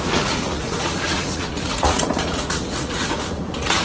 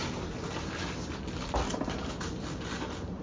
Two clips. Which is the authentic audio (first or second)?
second